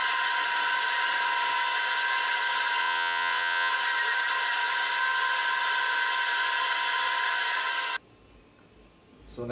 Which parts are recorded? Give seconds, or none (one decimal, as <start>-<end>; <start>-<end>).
0.0-2.8; 3.7-9.5